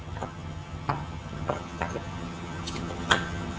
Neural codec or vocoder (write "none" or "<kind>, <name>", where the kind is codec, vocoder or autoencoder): vocoder, HiFi-GAN